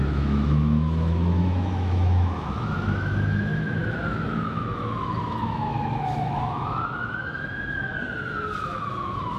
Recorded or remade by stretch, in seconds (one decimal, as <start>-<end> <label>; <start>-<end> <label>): 0.0-7.9 remade; 7.9-8.6 recorded; 8.6-9.4 remade